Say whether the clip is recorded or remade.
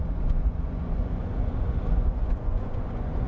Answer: remade